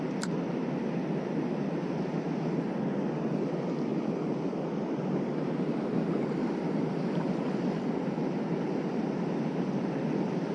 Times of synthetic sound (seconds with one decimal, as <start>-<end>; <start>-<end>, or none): none